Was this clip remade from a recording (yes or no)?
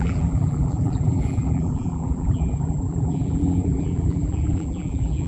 yes